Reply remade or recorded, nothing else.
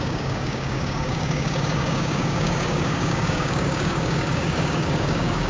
remade